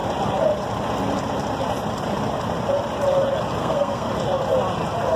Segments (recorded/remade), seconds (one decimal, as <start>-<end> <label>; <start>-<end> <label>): 0.0-3.6 recorded; 3.6-4.1 remade; 4.1-5.2 recorded